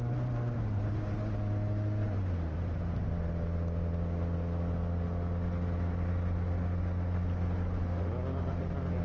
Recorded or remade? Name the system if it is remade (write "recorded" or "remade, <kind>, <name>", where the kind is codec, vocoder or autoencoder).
recorded